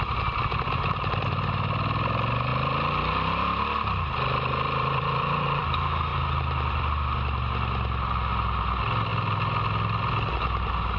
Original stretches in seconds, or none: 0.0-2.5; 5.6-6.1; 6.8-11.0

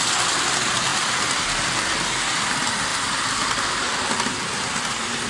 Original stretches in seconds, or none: 0.0-0.9; 1.6-2.9; 4.3-5.3

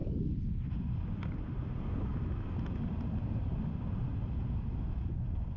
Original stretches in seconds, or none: 2.3-3.4; 4.0-5.6

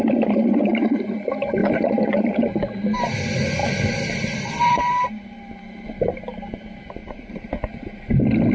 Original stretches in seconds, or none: 0.0-1.6; 2.4-3.6; 5.1-7.0; 7.5-8.5

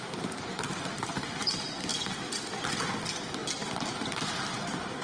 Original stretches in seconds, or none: 3.4-4.0

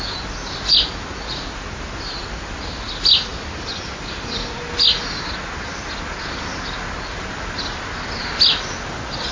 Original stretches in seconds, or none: 0.0-3.3; 4.6-9.3

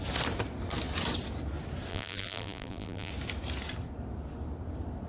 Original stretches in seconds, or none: 0.0-1.9; 3.1-5.1

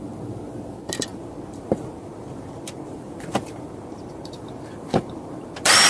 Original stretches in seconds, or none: 0.0-1.1; 4.6-5.9